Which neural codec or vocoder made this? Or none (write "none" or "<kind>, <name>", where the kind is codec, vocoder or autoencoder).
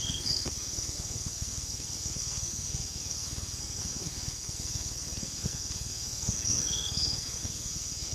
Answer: codec, SNAC